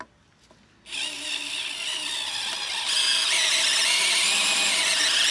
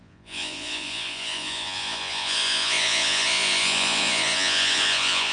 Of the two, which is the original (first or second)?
first